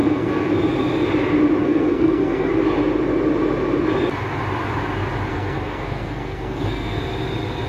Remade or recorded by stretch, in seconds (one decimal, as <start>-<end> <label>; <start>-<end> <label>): 0.0-0.5 remade; 0.5-1.6 recorded; 1.6-2.5 remade; 2.5-5.3 recorded; 5.3-7.0 remade; 7.0-7.7 recorded